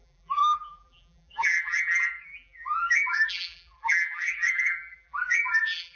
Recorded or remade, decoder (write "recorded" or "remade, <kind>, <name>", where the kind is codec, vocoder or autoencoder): remade, vocoder, BigVGAN v2